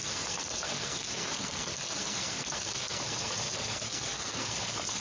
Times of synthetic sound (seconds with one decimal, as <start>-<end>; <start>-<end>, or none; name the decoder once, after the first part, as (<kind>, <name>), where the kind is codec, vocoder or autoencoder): 0.0-5.0 (codec, SNAC)